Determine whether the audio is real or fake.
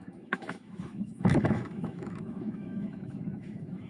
fake